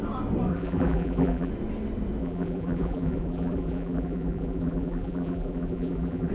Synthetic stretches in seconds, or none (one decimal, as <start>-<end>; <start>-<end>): 0.5-1.5; 2.2-6.3